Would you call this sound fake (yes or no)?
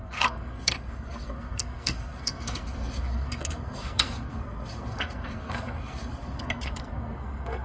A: yes